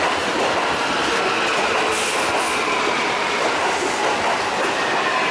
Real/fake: real